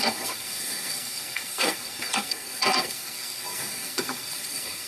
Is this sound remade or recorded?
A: remade